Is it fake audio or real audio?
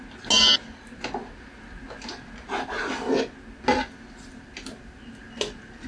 real